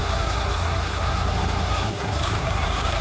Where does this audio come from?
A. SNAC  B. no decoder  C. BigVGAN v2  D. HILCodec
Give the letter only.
A